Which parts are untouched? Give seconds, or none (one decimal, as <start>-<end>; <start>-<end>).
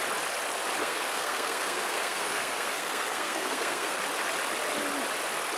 0.0-0.8; 4.0-5.6